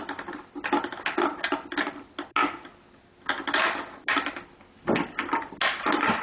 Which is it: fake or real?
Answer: real